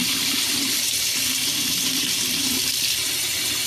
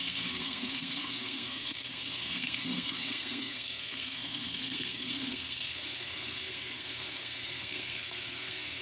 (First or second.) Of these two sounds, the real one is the first